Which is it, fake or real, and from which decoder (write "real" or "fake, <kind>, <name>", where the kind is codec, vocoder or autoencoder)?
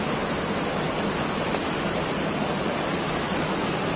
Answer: real